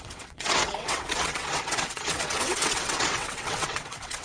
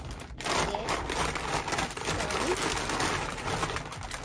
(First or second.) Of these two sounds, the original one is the second